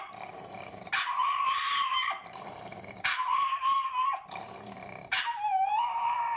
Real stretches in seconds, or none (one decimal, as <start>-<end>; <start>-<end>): none